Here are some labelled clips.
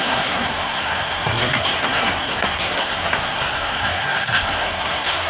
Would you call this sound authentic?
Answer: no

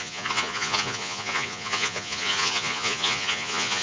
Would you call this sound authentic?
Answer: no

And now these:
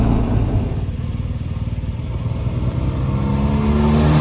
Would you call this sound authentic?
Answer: yes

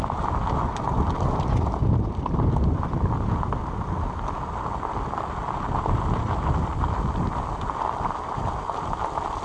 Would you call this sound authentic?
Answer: yes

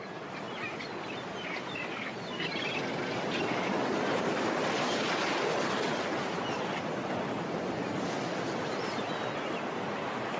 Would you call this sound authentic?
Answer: yes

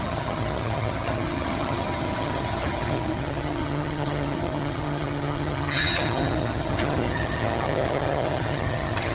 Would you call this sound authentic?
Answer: no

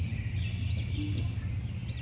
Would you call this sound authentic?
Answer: yes